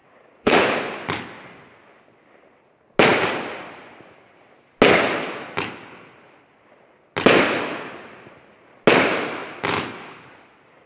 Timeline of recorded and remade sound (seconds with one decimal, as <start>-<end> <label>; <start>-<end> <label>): 0.0-0.8 remade; 0.8-10.9 recorded